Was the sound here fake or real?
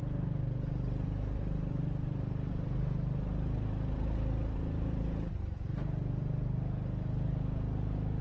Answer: real